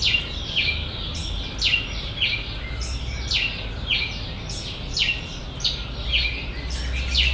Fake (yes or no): no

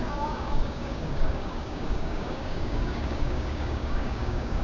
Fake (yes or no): yes